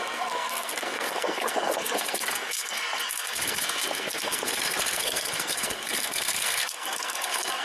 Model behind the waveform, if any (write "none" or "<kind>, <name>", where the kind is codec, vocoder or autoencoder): codec, SNAC